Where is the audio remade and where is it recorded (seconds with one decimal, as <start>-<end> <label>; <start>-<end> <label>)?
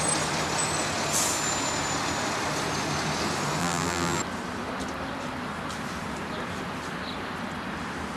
0.0-3.6 recorded; 3.6-4.2 remade; 4.2-8.2 recorded